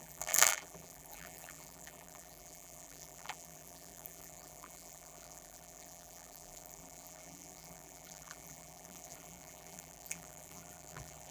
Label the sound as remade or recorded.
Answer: remade